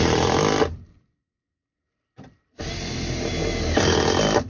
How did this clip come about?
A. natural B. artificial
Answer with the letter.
A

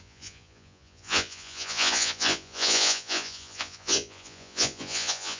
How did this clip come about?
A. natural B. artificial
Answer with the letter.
B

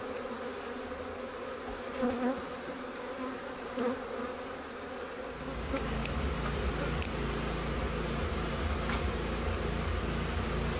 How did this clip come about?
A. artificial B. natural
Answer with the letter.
B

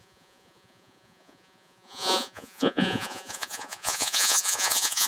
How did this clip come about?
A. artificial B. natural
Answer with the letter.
A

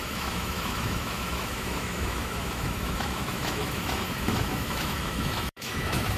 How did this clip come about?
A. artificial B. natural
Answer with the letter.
A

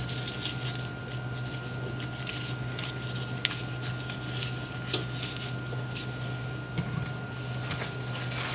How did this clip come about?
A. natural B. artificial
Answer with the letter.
A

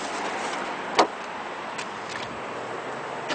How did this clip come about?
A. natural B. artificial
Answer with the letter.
B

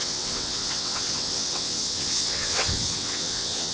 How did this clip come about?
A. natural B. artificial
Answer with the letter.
B